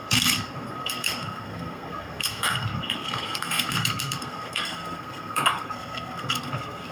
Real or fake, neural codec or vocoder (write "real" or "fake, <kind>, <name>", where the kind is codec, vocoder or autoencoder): fake, codec, SNAC